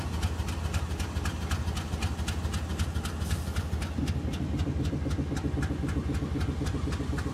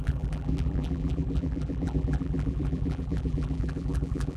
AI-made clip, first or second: second